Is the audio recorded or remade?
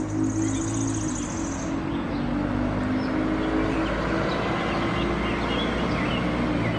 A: recorded